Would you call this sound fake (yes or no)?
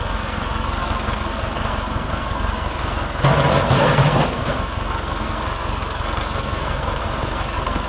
yes